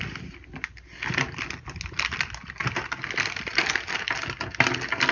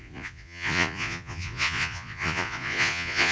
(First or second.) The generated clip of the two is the second